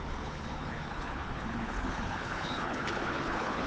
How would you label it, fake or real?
fake